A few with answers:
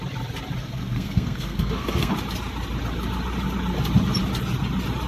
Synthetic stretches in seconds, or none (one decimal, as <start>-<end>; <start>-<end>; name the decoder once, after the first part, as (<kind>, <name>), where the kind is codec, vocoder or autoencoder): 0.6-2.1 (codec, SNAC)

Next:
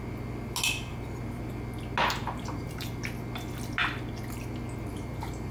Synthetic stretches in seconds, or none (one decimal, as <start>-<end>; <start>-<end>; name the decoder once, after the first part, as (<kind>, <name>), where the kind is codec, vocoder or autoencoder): 0.9-1.5 (vocoder, BigVGAN v2); 2.2-2.9; 4.9-5.5

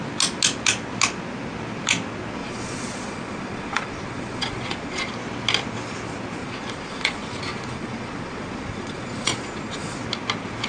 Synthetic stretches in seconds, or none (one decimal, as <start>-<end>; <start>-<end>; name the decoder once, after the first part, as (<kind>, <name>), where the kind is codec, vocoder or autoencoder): 2.4-5.1 (vocoder, Vocos); 6.4-10.0

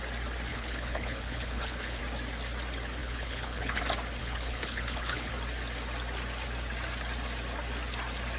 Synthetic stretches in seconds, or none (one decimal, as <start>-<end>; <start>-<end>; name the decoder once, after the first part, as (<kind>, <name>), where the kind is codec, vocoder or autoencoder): 0.5-2.0 (codec, HILCodec); 3.0-3.8; 4.2-5.3

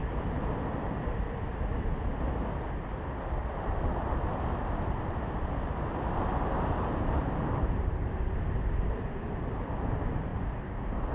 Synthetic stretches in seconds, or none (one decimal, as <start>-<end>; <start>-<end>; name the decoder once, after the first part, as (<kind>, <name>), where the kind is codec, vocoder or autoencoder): none

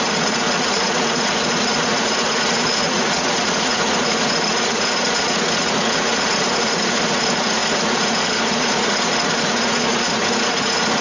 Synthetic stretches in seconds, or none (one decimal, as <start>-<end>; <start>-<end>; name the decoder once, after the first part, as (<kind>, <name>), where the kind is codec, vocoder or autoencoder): 0.0-11.0 (vocoder, Vocos)

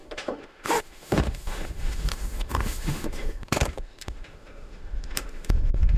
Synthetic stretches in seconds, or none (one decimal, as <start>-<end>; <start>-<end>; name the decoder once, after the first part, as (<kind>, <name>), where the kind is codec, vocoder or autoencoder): 0.0-6.0 (autoencoder, DAC-VAE)